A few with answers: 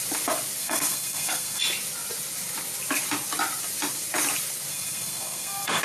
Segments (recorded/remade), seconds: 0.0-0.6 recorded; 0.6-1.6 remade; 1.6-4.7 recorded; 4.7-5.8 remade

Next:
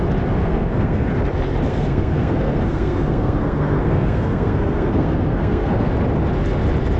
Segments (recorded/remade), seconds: 0.0-0.4 recorded; 0.4-1.1 remade; 1.1-1.7 recorded; 1.7-5.9 remade; 5.9-7.0 recorded

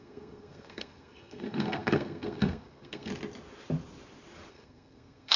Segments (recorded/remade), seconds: 0.0-3.1 remade; 3.1-4.5 recorded; 4.5-5.4 remade

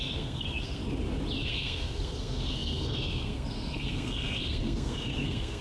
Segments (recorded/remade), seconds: 0.0-0.8 remade; 0.8-1.4 recorded; 1.4-5.6 remade

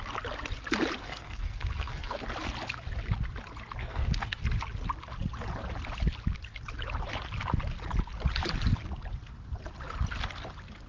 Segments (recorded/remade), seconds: 0.0-1.0 recorded; 1.0-2.2 remade; 2.2-3.8 recorded; 3.8-4.4 remade; 4.4-10.9 recorded

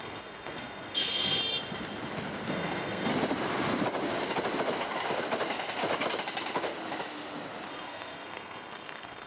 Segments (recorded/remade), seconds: 0.0-1.4 remade; 1.4-2.5 recorded; 2.5-3.1 remade; 3.1-7.7 recorded; 7.7-9.3 remade

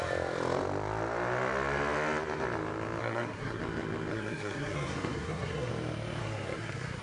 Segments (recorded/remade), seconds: 0.0-3.0 recorded; 3.0-3.6 remade; 3.6-4.1 recorded; 4.1-5.7 remade; 5.7-6.2 recorded; 6.2-7.0 remade